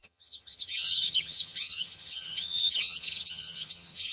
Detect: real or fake fake